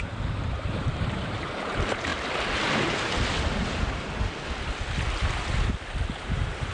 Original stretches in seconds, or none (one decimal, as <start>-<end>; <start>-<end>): 2.1-6.1